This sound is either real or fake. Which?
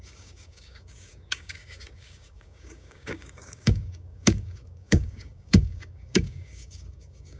fake